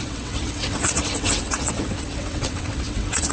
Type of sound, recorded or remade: remade